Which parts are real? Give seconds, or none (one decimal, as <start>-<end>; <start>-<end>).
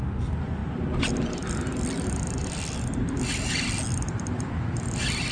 0.0-5.3